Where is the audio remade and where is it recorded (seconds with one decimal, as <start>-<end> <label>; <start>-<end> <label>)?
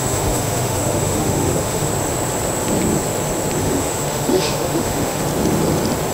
0.0-1.9 remade; 1.9-3.6 recorded; 3.6-5.2 remade; 5.2-6.1 recorded